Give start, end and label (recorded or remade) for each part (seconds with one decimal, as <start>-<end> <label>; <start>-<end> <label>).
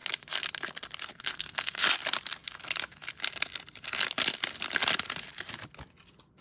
0.0-1.1 recorded; 1.1-1.8 remade; 1.8-6.4 recorded